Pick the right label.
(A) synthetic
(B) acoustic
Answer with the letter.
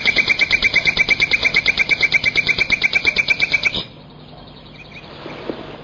A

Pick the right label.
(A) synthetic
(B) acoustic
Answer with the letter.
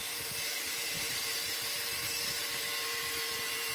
A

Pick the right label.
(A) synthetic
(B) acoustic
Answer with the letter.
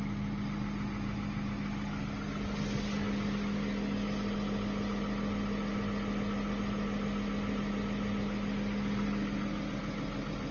B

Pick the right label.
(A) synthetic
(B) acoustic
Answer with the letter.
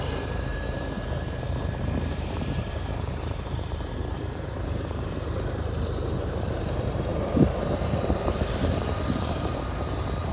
A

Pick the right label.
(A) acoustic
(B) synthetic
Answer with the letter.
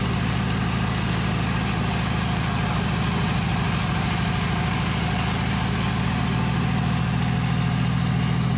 A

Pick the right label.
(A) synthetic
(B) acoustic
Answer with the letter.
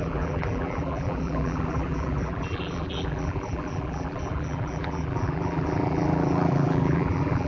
A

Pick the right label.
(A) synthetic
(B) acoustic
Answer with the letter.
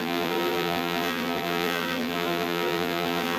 A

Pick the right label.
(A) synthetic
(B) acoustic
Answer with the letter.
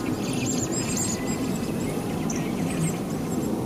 B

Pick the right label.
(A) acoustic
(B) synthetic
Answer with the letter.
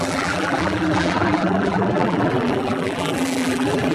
B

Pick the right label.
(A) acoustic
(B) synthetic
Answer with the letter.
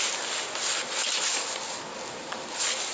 A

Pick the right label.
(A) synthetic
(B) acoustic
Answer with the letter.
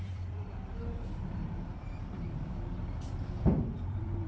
A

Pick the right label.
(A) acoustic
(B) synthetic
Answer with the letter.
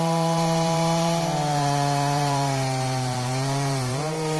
B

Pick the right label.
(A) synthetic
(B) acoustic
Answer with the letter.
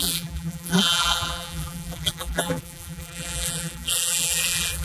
A